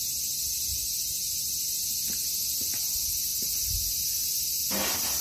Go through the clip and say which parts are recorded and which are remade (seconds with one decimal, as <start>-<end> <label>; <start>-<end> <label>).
0.0-5.2 recorded